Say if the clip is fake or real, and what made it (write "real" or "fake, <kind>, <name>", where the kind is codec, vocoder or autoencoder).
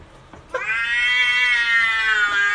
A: real